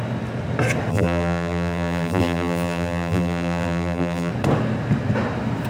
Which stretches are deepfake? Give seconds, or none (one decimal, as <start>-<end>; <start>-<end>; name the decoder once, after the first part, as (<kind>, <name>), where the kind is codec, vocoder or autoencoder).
0.9-4.3 (vocoder, BigVGAN v2)